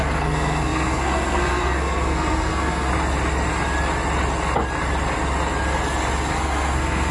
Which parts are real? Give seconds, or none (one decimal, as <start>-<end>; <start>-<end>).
2.9-6.3